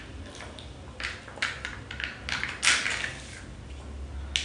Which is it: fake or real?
real